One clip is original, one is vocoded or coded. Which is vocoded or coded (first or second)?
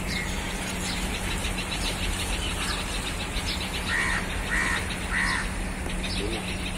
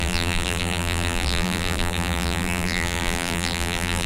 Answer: second